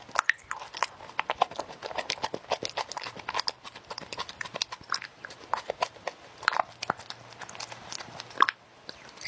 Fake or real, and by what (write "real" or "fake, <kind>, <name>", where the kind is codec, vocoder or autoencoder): real